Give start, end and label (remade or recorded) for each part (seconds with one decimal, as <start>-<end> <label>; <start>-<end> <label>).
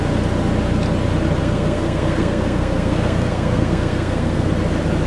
0.0-1.4 recorded; 1.4-4.5 remade; 4.5-5.1 recorded